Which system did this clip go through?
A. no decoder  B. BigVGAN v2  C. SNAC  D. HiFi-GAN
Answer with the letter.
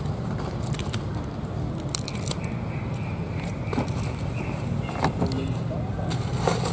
A